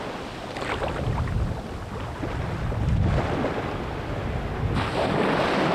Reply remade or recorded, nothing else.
recorded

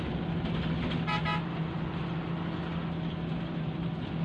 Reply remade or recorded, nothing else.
recorded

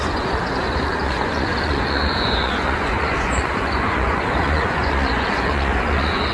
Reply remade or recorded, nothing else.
remade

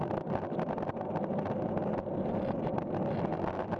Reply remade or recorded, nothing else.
recorded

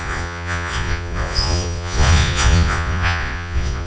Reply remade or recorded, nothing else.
remade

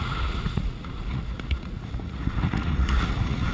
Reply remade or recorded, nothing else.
remade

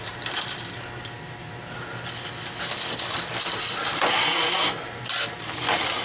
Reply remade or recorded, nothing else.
recorded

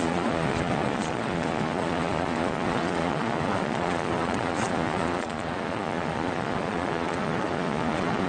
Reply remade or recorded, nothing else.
remade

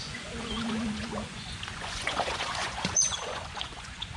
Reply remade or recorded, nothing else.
remade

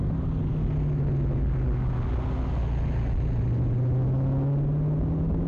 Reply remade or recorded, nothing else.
recorded